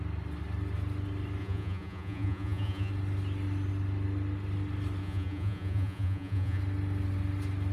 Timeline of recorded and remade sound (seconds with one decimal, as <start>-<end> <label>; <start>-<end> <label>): 0.0-1.4 recorded; 1.4-2.9 remade; 2.9-5.0 recorded; 5.0-6.6 remade; 6.6-7.7 recorded